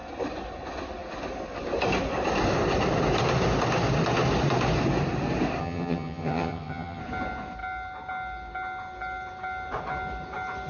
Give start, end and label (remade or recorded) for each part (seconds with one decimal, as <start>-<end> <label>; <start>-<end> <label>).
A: 0.0-5.6 recorded; 5.6-7.0 remade; 7.0-10.7 recorded